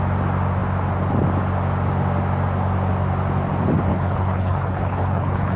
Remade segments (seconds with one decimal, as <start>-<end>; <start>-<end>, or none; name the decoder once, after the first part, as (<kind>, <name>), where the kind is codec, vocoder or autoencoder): 3.9-5.6 (codec, HILCodec)